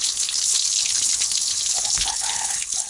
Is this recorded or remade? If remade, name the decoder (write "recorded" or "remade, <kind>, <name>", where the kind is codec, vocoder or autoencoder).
remade, codec, HILCodec